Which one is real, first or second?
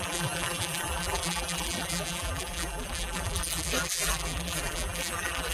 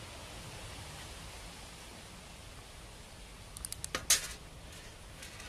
second